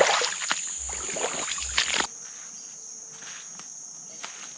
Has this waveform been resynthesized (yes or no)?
no